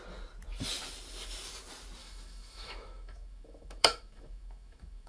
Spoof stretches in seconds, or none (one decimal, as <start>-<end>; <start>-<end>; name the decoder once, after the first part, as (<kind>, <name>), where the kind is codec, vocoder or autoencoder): 2.0-5.1 (autoencoder, DAC-VAE)